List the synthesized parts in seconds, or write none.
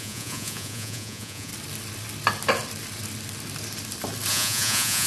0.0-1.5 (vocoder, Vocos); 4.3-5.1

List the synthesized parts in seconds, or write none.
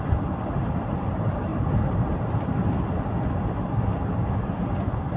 none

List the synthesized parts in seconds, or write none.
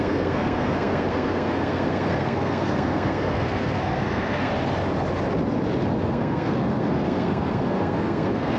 0.0-4.5 (codec, SNAC); 6.0-8.6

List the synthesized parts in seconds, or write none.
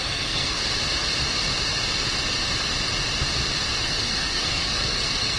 0.0-0.6 (codec, SNAC); 3.8-5.4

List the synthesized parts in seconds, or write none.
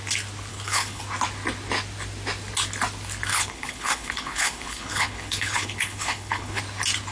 0.5-1.0 (codec, HILCodec); 3.3-6.6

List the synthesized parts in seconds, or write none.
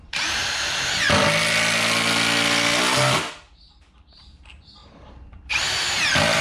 0.0-0.4 (vocoder, BigVGAN v2); 4.2-6.4